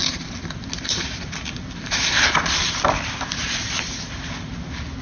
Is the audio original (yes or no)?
yes